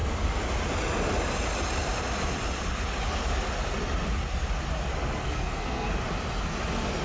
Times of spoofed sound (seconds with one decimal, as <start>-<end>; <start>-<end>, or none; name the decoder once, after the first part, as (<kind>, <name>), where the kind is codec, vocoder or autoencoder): 5.2-5.9 (codec, SNAC)